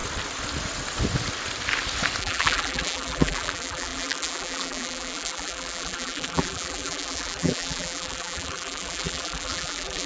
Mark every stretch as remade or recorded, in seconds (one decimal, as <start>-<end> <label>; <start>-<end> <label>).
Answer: 0.0-2.2 recorded; 2.2-10.1 remade